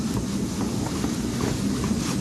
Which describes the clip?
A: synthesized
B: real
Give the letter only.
B